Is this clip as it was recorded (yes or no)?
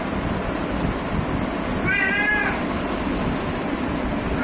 yes